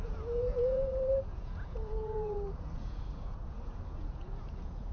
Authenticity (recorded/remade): remade